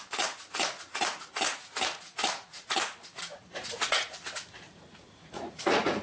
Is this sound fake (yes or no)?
yes